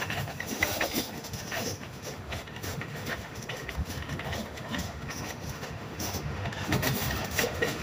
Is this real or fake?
fake